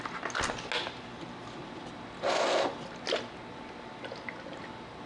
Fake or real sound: real